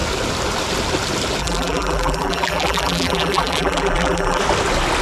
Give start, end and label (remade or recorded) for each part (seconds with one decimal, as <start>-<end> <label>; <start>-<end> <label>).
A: 0.0-1.4 recorded; 1.4-4.4 remade; 4.4-5.0 recorded